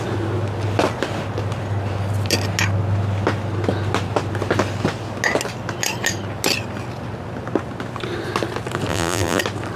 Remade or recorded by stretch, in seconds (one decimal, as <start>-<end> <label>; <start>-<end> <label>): 0.0-8.9 recorded; 8.9-9.4 remade; 9.4-9.8 recorded